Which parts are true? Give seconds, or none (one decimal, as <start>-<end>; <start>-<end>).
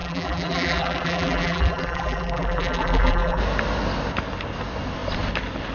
3.4-5.7